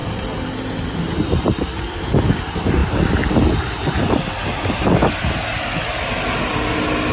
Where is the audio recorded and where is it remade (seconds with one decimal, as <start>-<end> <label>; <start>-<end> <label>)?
0.0-2.4 remade; 2.4-5.5 recorded; 5.5-6.1 remade; 6.1-7.1 recorded